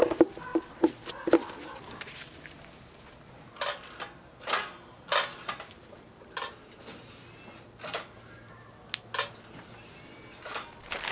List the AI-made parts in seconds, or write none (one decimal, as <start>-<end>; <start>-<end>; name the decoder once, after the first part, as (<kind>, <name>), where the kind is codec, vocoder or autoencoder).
none